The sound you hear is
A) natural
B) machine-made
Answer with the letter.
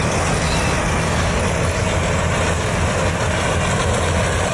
A